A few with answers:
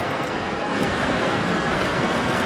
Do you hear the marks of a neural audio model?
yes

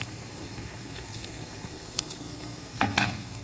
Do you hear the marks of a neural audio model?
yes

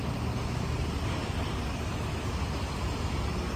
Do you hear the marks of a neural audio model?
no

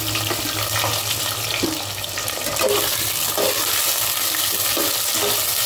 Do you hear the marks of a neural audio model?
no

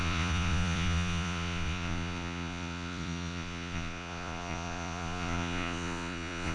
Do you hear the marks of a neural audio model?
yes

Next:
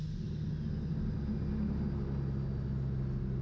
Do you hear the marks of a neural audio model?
no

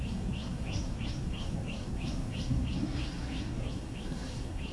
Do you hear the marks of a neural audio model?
yes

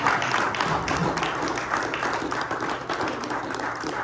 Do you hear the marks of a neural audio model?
yes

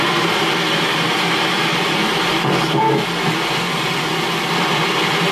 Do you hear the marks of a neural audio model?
yes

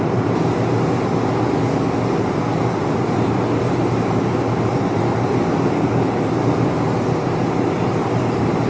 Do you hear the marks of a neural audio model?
no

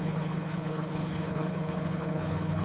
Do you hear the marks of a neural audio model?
yes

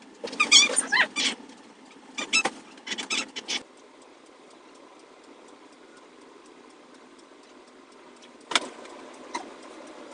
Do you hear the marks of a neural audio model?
no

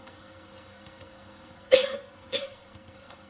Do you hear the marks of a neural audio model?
yes